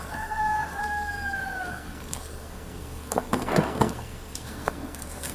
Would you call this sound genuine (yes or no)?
no